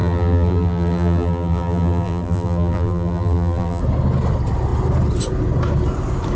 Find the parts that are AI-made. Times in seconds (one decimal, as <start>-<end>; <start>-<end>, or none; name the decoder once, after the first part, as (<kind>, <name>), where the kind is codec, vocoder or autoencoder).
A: 0.0-3.8 (vocoder, BigVGAN v2)